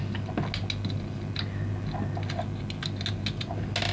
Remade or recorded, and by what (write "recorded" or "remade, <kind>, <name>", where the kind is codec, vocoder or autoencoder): recorded